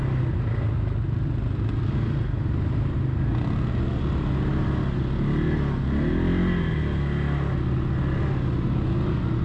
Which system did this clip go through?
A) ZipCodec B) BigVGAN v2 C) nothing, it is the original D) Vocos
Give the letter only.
C